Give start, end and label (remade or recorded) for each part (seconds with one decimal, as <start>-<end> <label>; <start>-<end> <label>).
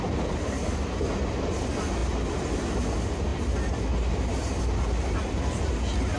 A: 0.0-6.2 recorded